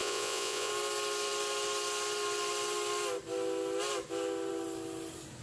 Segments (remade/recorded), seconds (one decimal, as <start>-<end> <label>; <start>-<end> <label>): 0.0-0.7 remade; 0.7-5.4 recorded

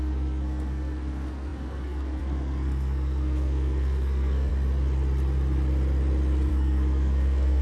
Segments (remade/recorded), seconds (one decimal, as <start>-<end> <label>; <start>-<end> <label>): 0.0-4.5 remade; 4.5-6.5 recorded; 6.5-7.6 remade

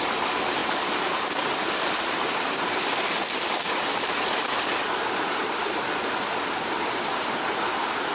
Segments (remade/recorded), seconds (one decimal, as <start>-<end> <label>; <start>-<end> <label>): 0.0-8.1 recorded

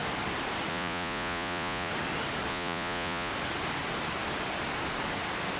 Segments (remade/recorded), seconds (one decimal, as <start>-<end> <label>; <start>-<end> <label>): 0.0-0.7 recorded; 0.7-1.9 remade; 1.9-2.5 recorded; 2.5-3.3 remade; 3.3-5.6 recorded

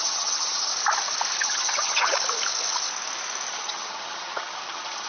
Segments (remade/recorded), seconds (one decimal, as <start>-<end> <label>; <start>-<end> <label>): 0.0-0.7 remade; 0.7-1.4 recorded; 1.4-2.1 remade; 2.1-3.5 recorded; 3.5-5.1 remade

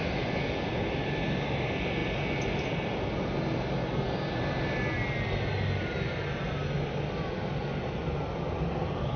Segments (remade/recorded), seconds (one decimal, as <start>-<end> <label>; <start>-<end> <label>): 0.0-9.2 recorded